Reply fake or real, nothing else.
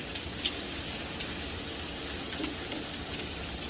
real